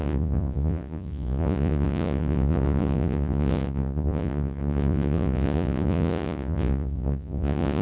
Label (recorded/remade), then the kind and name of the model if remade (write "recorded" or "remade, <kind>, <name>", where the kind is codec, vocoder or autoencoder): remade, vocoder, Vocos